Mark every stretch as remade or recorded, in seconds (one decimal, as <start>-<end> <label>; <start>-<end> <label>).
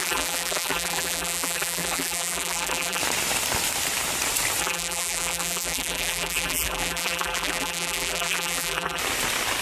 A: 0.0-3.0 remade; 3.0-4.6 recorded; 4.6-9.0 remade; 9.0-9.6 recorded